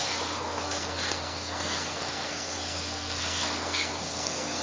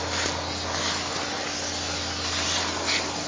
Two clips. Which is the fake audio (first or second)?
first